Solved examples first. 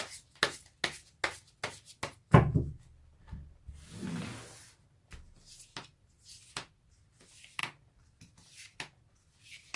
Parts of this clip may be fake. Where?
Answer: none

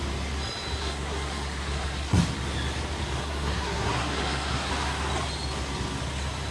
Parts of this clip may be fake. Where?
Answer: 0.8-2.2 (codec, SNAC); 3.2-4.7

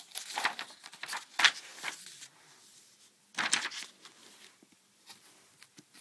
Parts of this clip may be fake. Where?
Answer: none

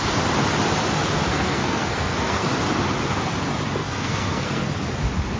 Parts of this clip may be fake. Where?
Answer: 1.3-2.5 (codec, SNAC); 3.8-4.7

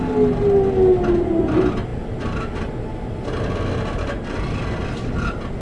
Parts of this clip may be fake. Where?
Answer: none